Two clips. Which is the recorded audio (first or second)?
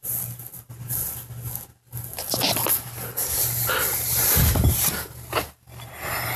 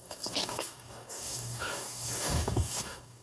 first